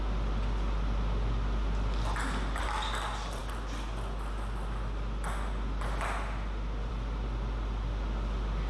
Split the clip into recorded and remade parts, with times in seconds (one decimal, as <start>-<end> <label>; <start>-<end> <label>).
0.0-8.7 recorded